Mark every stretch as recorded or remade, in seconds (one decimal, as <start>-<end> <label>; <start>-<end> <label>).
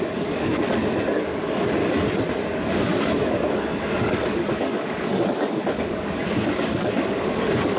0.0-1.8 remade; 1.8-2.3 recorded; 2.3-7.8 remade